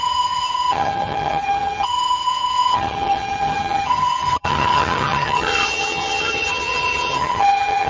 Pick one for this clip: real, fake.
fake